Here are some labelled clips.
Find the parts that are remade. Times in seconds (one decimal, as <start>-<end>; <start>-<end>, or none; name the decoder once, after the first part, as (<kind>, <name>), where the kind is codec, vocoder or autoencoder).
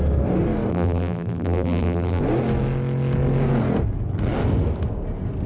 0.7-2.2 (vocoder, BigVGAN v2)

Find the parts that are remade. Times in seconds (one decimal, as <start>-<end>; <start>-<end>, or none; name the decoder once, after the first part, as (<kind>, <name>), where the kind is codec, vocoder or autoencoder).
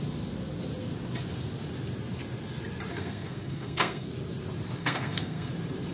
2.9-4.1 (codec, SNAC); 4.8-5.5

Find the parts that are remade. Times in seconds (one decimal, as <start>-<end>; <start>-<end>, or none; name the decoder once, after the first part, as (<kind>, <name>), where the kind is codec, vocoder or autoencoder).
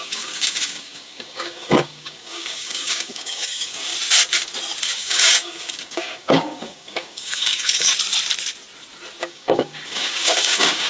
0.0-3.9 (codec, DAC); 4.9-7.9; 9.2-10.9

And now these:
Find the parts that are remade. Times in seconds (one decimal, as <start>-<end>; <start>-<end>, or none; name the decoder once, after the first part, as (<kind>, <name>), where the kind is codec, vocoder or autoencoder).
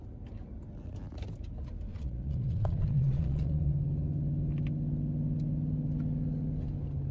1.9-3.7 (vocoder, Vocos)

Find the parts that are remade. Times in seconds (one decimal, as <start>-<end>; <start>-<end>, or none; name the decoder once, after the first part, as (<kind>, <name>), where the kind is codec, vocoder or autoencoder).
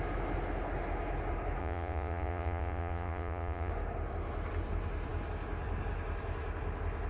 1.6-3.7 (vocoder, Vocos)